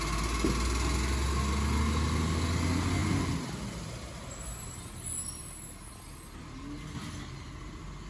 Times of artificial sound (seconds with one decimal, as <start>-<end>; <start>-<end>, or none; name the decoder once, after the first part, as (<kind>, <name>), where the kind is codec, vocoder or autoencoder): none